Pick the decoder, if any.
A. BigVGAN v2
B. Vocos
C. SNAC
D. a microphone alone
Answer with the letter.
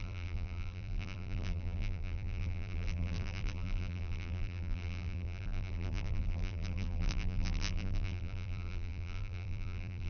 A